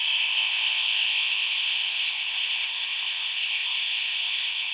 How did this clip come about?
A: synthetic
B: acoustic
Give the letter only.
A